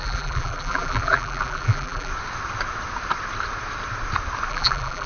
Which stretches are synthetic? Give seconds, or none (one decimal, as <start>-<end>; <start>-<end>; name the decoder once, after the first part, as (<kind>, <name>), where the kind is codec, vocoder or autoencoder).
0.0-2.1 (vocoder, BigVGAN v2); 4.5-5.1